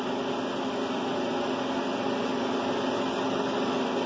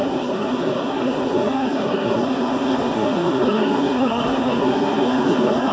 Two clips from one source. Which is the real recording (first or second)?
first